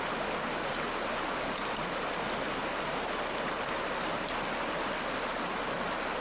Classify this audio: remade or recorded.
recorded